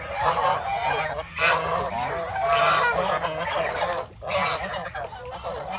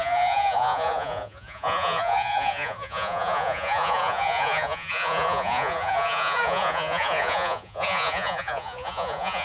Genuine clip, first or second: first